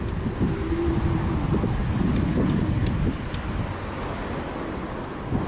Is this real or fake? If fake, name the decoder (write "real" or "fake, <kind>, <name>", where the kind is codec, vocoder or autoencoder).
real